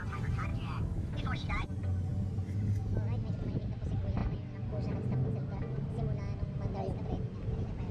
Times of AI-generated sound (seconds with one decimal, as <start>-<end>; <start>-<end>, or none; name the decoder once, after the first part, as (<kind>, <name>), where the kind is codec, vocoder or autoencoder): 0.5-1.1 (autoencoder, DAC-VAE)